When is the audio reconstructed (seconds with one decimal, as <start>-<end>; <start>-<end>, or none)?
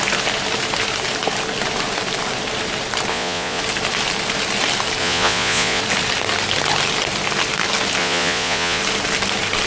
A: 3.1-3.6; 5.0-5.8; 8.0-8.8